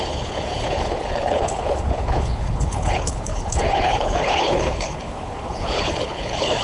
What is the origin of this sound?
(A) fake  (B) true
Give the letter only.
A